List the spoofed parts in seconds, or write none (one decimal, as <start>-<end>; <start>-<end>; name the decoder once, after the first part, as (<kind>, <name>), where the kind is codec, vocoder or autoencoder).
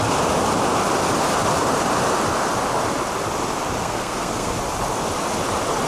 3.8-4.5 (codec, SNAC)